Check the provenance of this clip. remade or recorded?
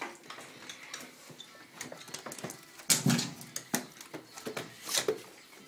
recorded